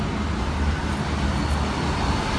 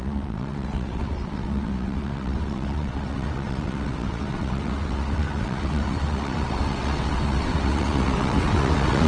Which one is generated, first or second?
second